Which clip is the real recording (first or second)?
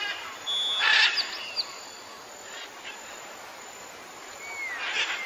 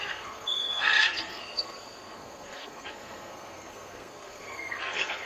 first